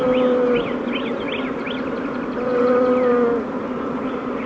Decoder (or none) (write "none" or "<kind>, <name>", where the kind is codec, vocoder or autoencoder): none